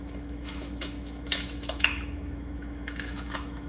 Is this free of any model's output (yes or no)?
no